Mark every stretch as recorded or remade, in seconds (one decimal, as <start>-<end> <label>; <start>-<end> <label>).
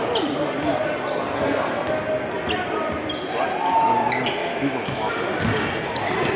0.0-4.4 recorded; 4.4-5.1 remade; 5.1-6.4 recorded